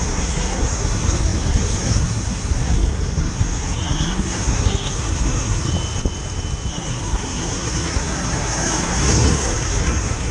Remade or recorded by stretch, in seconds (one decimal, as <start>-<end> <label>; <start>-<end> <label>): 0.0-5.7 remade; 5.7-6.7 recorded; 6.7-10.3 remade